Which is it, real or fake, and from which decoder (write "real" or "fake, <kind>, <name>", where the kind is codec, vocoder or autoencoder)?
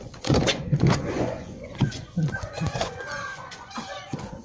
fake, vocoder, Vocos